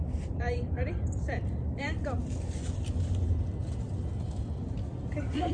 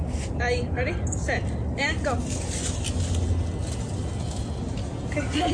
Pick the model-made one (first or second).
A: first